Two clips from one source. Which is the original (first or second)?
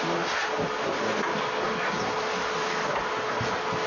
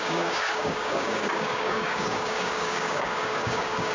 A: first